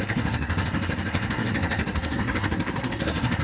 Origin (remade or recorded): remade